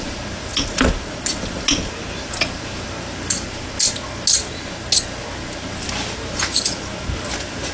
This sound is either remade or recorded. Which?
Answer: recorded